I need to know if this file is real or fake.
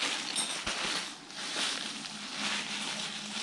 real